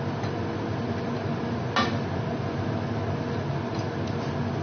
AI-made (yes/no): no